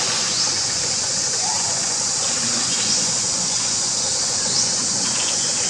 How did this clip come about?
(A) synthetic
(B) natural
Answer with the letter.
A